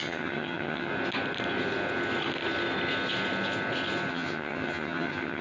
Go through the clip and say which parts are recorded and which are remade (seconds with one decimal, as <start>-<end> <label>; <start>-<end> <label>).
0.0-0.9 remade; 0.9-4.1 recorded; 4.1-5.4 remade